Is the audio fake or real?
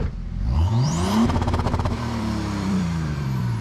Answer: fake